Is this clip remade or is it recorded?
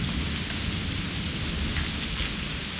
recorded